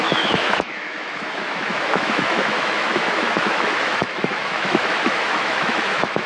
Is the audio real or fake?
fake